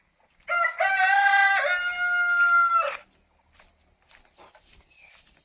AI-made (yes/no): no